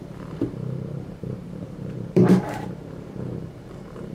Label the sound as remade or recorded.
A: remade